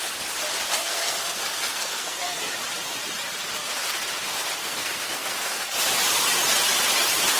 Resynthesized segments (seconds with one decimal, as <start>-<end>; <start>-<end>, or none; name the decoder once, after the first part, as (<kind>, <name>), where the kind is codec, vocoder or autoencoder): 0.8-2.4 (codec, SNAC); 4.6-5.7